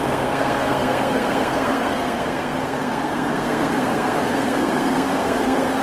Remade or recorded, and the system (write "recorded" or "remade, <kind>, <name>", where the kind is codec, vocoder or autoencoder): remade, codec, SNAC